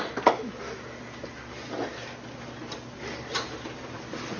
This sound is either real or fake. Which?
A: real